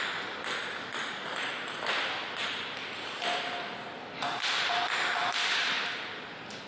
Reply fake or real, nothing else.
real